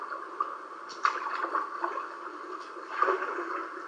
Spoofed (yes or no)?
no